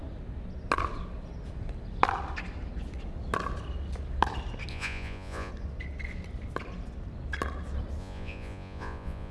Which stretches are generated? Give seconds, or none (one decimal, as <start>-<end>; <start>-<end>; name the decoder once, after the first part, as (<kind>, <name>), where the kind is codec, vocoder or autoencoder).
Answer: 4.7-5.5 (vocoder, Vocos); 8.0-9.3